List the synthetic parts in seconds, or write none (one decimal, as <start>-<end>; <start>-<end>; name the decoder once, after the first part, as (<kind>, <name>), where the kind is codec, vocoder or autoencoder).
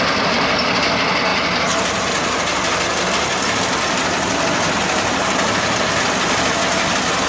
1.3-2.0 (vocoder, BigVGAN v2); 3.3-6.1